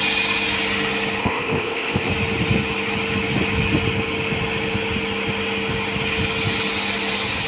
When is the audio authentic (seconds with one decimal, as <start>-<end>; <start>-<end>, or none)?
0.0-1.2; 2.1-7.5